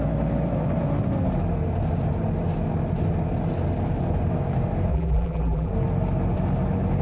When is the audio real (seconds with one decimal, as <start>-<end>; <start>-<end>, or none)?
0.0-4.9; 5.7-7.0